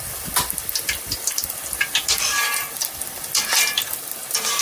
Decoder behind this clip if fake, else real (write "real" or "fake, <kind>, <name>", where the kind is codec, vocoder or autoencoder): real